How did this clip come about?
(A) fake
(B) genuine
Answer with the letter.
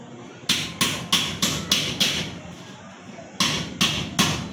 B